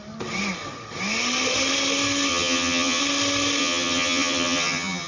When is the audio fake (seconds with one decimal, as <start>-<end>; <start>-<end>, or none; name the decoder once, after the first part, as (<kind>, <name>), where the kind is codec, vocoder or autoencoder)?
2.3-3.0 (vocoder, HiFi-GAN); 3.6-5.1